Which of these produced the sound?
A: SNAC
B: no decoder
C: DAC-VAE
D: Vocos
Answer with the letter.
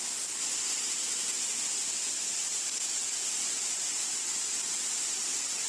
B